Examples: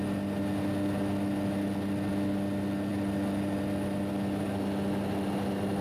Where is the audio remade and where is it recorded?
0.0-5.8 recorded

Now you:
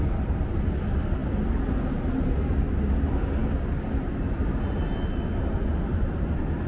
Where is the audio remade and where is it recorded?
0.0-6.7 recorded

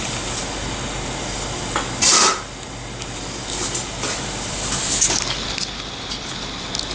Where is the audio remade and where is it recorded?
0.0-6.9 recorded

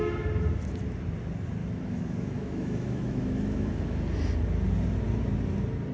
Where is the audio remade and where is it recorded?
0.0-1.6 recorded; 1.6-4.0 remade; 4.0-5.9 recorded

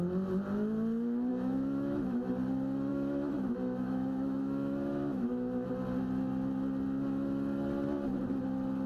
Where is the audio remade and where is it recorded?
0.0-1.3 recorded; 1.3-2.3 remade; 2.3-2.9 recorded; 2.9-5.7 remade; 5.7-8.9 recorded

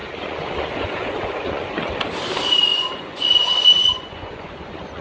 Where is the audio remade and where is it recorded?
0.0-1.9 remade; 1.9-2.7 recorded; 2.7-5.0 remade

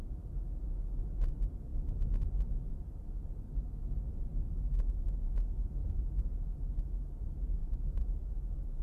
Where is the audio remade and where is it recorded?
0.0-8.8 recorded